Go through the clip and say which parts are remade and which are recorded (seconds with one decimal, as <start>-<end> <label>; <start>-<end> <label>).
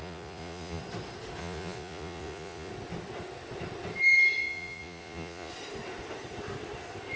0.0-0.8 remade; 0.8-1.4 recorded; 1.4-2.7 remade; 2.7-4.4 recorded; 4.4-5.5 remade; 5.5-7.2 recorded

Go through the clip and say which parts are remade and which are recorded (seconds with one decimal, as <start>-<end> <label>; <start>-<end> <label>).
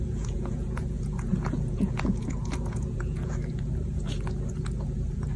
0.0-5.4 remade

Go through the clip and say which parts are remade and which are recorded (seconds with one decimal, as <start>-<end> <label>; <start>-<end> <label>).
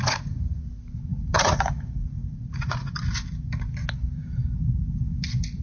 0.0-0.7 remade; 0.7-1.1 recorded; 1.1-2.9 remade; 2.9-5.6 recorded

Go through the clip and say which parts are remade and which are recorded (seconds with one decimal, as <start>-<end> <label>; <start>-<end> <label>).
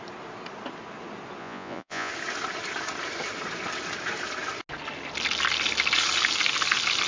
0.0-1.4 recorded; 1.4-2.1 remade; 2.1-7.1 recorded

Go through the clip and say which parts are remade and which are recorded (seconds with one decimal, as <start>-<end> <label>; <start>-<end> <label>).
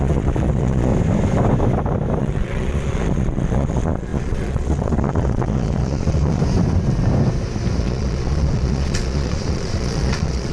0.0-0.9 remade; 0.9-2.2 recorded; 2.2-6.4 remade; 6.4-7.8 recorded; 7.8-10.5 remade